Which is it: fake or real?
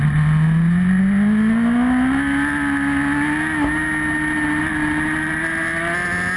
real